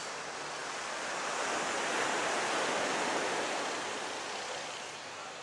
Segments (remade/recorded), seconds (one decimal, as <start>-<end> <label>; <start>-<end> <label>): 0.0-5.4 recorded